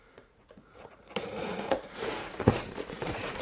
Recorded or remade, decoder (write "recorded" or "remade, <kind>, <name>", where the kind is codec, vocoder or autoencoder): remade, vocoder, Vocos